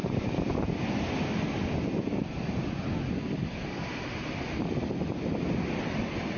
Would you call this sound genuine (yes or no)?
yes